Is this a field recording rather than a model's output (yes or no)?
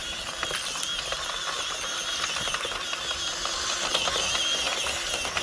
yes